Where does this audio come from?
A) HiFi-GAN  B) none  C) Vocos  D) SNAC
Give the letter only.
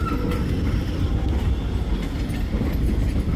B